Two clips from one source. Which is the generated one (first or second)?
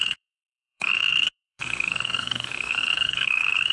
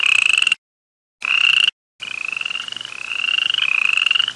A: first